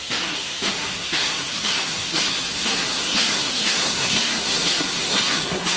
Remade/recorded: remade